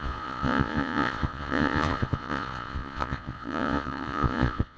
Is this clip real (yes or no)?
no